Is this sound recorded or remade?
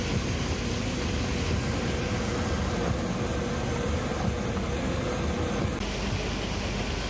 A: recorded